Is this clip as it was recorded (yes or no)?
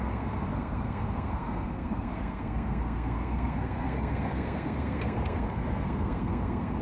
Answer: no